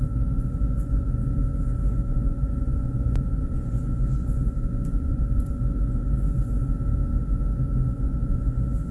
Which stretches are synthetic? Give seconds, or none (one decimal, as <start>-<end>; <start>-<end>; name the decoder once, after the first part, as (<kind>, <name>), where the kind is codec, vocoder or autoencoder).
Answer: 0.0-1.2 (vocoder, Vocos); 1.9-6.6; 7.9-8.9